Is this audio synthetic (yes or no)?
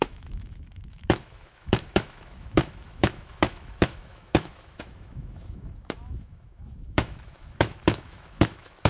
yes